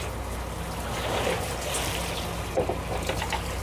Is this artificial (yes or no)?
no